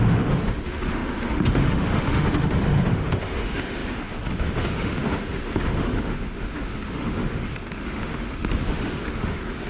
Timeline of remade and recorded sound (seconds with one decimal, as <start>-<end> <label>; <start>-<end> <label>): 0.0-9.7 remade